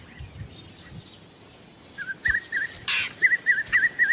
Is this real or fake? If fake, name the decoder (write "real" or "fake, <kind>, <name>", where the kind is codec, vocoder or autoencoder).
real